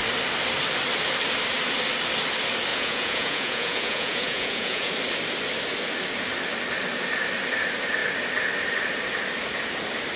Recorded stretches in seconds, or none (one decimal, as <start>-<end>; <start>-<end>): 0.0-2.7; 4.9-10.2